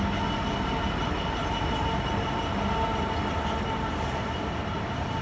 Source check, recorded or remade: recorded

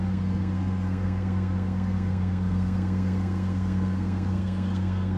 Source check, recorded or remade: remade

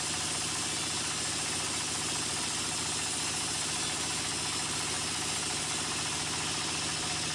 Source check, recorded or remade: recorded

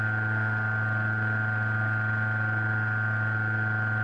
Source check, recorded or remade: recorded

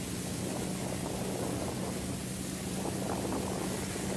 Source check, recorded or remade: recorded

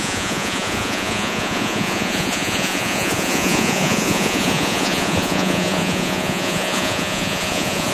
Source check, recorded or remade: remade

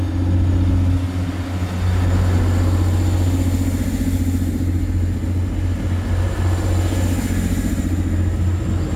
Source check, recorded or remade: recorded